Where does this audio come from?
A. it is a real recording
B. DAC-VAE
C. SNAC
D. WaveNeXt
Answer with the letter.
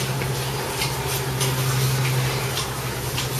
A